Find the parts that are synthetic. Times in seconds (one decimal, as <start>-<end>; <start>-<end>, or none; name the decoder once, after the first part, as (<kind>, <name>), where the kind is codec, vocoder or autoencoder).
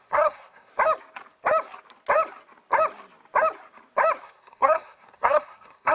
0.0-0.7 (codec, SNAC); 4.2-5.9